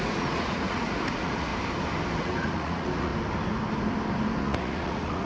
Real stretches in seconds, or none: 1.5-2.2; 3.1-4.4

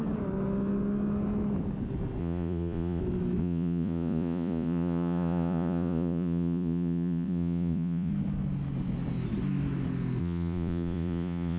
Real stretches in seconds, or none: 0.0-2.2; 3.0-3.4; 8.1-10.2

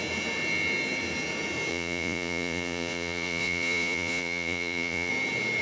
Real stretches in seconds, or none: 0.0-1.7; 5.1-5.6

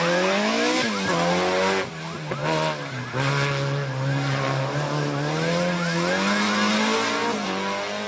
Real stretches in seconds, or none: 0.0-8.1

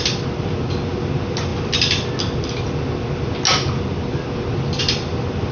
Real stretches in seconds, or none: 0.0-5.5

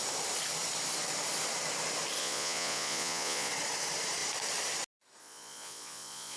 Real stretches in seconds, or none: 0.0-2.2; 3.5-5.2